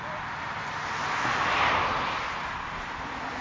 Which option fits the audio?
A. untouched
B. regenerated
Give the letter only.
A